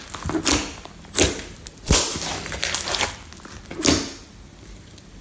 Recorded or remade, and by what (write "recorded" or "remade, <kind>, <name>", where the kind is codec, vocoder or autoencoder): recorded